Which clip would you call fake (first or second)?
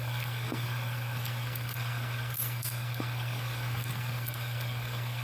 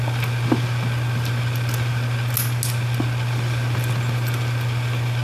first